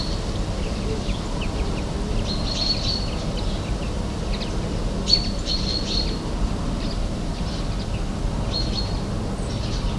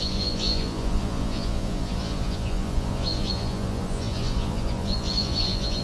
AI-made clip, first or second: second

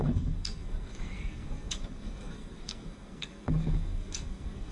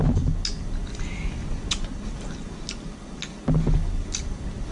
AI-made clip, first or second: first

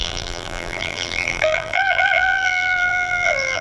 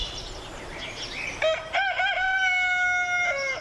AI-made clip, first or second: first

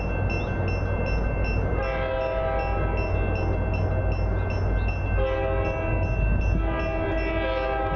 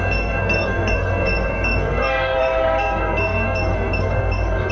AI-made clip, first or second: second